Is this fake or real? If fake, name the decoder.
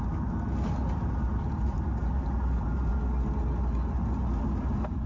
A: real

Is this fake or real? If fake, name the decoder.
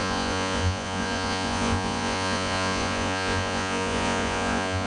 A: fake, vocoder, Vocos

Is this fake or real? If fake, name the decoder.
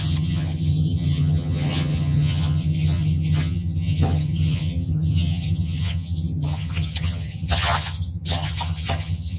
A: fake, vocoder, HiFi-GAN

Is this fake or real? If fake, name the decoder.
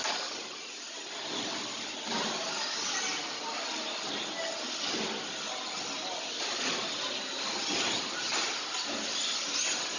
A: real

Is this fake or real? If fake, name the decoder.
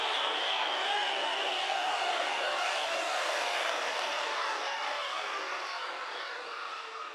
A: fake, codec, DAC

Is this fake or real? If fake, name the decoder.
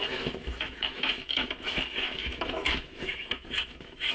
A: fake, autoencoder, DAC-VAE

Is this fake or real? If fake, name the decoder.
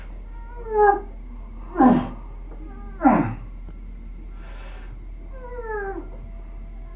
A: real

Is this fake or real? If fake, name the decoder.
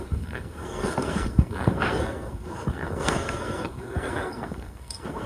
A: fake, codec, SNAC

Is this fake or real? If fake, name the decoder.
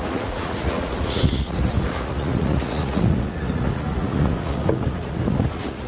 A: fake, vocoder, Vocos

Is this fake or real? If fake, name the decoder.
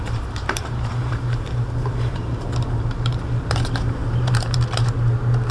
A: fake, vocoder, BigVGAN v2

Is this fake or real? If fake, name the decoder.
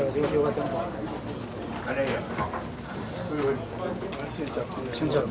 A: real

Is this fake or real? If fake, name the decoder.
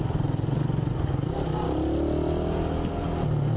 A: real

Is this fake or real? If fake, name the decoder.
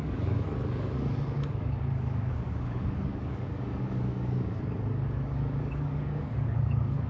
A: fake, codec, DAC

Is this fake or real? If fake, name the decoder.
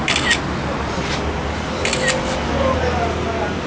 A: real